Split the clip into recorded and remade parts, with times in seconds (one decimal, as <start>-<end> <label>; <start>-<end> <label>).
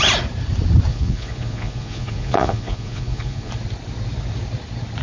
0.0-0.9 recorded; 0.9-3.5 remade; 3.5-5.0 recorded